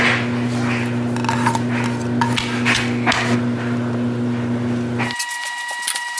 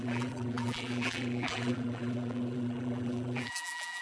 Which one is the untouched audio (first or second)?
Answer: first